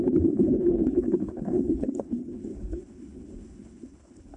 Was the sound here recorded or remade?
remade